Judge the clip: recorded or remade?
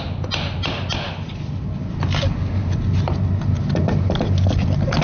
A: recorded